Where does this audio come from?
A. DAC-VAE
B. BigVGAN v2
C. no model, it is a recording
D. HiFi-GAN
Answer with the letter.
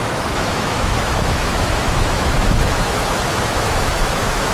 A